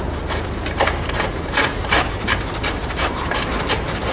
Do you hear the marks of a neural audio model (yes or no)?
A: yes